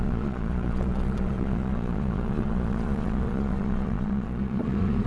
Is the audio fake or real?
fake